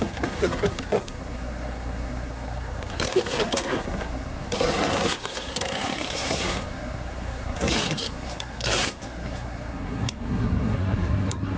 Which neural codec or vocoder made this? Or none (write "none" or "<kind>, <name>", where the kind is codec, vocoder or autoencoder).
codec, SNAC